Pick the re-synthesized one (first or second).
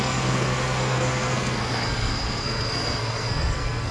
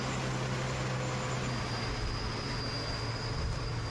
first